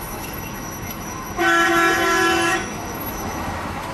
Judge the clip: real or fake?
fake